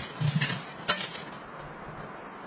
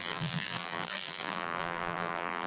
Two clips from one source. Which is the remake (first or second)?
second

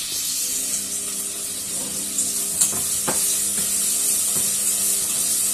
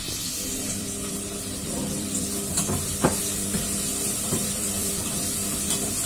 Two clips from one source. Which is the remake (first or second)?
second